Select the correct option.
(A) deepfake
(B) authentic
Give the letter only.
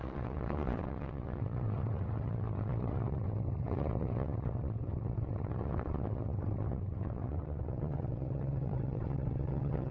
A